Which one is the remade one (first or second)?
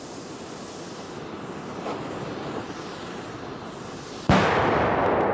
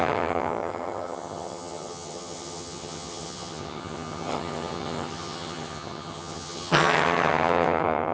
second